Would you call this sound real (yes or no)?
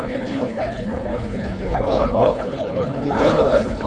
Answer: no